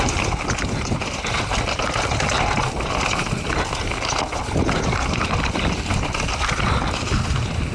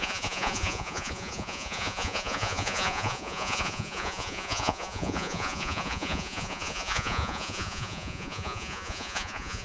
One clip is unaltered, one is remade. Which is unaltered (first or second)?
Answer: first